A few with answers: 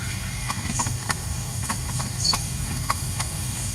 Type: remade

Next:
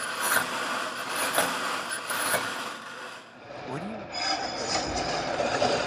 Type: remade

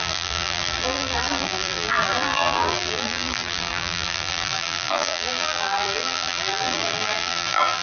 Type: remade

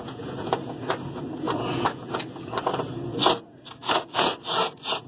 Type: remade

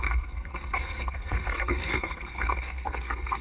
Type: remade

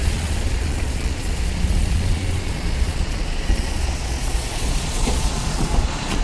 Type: remade